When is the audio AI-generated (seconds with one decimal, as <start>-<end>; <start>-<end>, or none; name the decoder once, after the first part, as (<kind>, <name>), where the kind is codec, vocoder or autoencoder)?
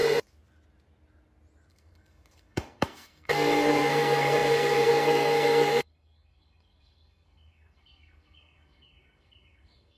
1.7-10.0 (codec, SNAC)